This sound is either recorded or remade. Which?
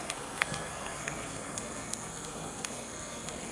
remade